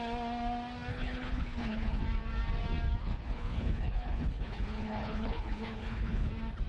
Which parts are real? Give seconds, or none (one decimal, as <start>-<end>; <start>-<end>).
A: 0.0-0.9; 2.0-3.0; 6.3-6.7